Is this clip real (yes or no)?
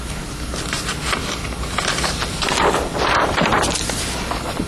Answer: yes